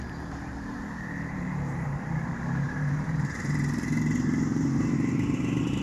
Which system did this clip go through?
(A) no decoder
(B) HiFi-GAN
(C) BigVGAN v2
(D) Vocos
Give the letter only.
C